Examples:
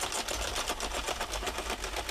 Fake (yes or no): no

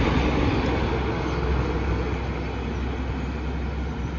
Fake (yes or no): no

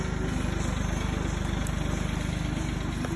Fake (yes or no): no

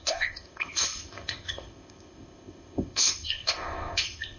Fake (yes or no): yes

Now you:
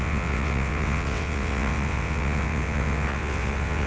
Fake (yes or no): yes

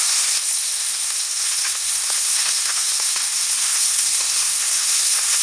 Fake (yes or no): yes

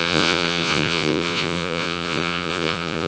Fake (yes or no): yes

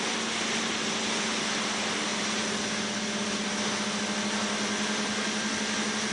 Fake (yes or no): no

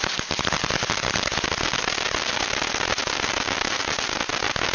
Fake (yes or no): no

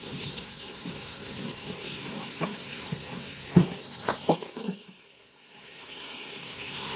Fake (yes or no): yes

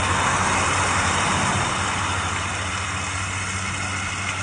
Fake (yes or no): no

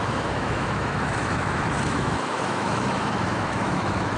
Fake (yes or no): yes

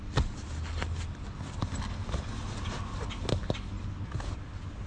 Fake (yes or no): no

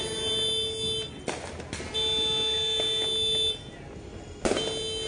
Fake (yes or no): no